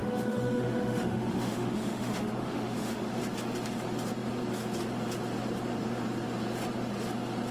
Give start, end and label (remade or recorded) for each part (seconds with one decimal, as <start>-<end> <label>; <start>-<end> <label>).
0.0-3.2 remade; 3.2-7.5 recorded